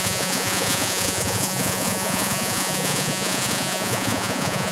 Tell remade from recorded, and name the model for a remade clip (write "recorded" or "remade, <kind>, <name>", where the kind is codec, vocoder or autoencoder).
remade, vocoder, Vocos